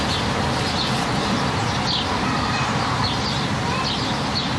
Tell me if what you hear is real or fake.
real